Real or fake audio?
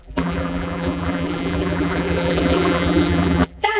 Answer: fake